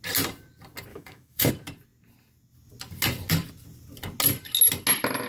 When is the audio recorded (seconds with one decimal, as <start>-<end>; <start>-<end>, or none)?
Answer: 0.0-0.9; 1.5-5.3